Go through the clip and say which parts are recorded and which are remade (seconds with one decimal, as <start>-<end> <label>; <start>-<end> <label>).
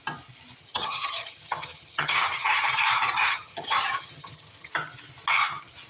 0.0-0.6 recorded; 0.6-2.7 remade; 2.7-3.2 recorded; 3.2-4.7 remade; 4.7-5.9 recorded